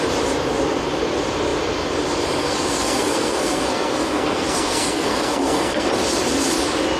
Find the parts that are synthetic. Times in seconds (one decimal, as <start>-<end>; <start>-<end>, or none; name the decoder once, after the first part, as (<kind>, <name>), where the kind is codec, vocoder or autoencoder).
2.4-5.9 (codec, SNAC)